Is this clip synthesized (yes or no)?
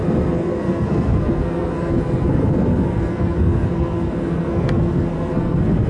yes